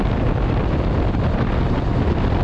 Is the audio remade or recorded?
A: recorded